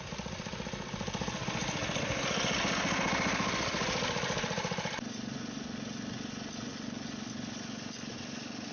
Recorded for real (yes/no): yes